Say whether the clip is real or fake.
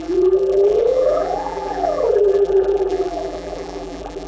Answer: fake